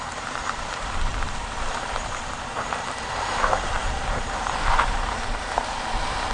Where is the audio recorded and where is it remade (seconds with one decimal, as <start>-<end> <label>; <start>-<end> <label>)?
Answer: 0.0-6.3 remade